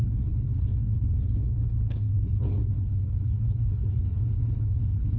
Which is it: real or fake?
fake